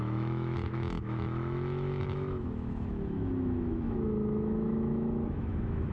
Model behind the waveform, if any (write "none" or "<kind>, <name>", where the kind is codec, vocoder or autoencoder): autoencoder, DAC-VAE